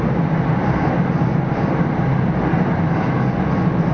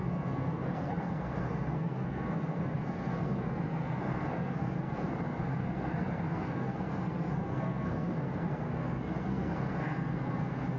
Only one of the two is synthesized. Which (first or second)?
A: second